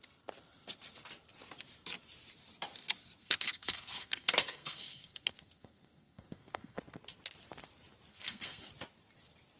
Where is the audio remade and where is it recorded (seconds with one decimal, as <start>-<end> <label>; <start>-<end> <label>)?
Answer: 0.0-3.2 recorded; 3.2-6.8 remade; 6.8-8.1 recorded; 8.1-8.7 remade; 8.7-9.6 recorded